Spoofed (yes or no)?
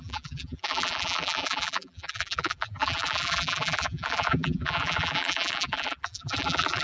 yes